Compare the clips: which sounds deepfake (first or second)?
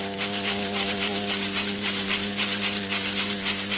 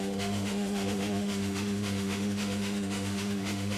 second